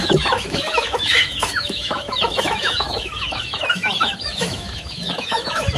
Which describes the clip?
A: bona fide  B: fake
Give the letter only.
B